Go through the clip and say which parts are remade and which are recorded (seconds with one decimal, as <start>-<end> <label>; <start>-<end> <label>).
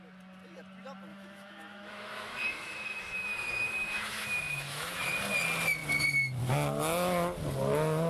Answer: 0.0-1.1 recorded; 1.1-5.1 remade; 5.1-8.1 recorded